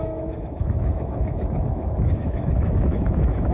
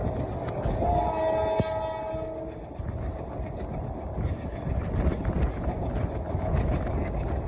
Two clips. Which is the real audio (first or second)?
second